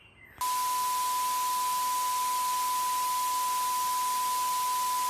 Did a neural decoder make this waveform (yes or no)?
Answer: no